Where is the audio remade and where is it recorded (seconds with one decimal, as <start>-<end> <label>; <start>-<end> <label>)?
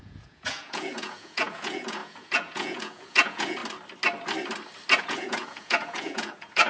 0.0-3.6 remade; 3.6-5.0 recorded; 5.0-6.7 remade